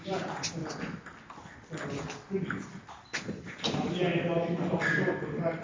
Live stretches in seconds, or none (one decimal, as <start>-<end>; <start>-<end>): 0.6-2.9; 4.1-5.6

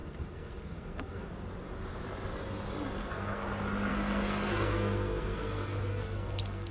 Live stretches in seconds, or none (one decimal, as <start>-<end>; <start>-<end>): 1.3-3.0; 3.5-3.9

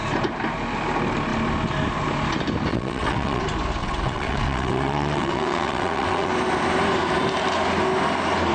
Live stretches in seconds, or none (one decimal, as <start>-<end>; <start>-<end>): 0.0-2.7; 3.4-3.8; 6.3-8.5

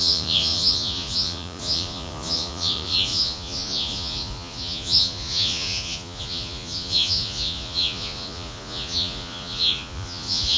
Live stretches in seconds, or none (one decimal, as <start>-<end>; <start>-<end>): none

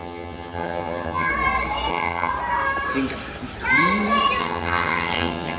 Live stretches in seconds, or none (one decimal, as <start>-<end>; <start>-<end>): 1.3-1.9; 2.3-4.4